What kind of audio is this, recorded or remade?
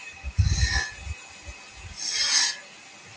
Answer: recorded